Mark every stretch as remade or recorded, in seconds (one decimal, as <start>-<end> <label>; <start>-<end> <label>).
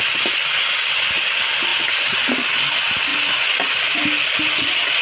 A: 0.0-5.0 recorded